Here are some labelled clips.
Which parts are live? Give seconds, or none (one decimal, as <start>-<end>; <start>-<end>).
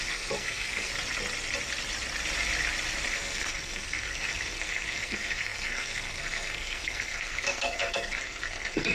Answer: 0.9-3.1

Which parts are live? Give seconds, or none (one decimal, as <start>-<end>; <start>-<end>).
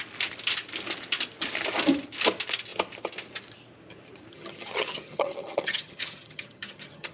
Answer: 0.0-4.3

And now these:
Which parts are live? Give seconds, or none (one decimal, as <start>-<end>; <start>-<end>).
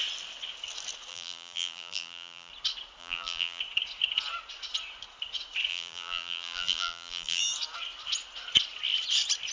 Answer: 0.0-1.1; 2.5-3.0; 3.6-5.7; 7.4-9.5